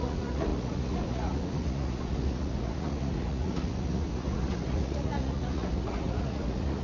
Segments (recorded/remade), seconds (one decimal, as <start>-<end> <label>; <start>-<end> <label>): 0.0-6.8 remade